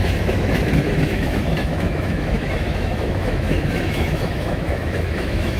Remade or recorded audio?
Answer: remade